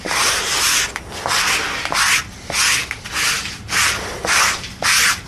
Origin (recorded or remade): remade